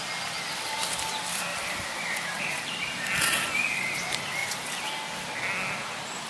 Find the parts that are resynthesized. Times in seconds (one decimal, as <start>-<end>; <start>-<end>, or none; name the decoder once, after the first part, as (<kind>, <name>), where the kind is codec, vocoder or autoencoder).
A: 1.5-2.6 (vocoder, BigVGAN v2)